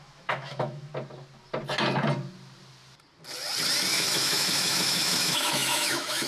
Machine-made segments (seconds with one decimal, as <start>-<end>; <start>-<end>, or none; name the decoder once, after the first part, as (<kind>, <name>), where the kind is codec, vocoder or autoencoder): 0.0-0.9 (autoencoder, DAC-VAE); 3.9-6.3

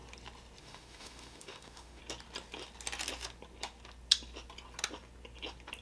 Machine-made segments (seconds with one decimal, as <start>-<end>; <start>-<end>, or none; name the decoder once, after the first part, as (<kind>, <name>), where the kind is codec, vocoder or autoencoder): 0.6-2.0 (autoencoder, DAC-VAE)

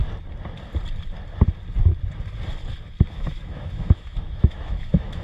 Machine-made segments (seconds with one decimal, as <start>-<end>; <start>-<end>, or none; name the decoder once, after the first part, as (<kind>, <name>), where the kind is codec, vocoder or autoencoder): 3.1-5.2 (autoencoder, DAC-VAE)

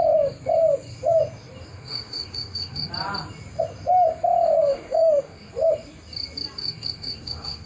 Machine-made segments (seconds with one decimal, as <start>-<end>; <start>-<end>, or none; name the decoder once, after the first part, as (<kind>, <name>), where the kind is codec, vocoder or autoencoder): 1.7-2.9 (autoencoder, DAC-VAE); 4.7-5.5; 6.6-7.7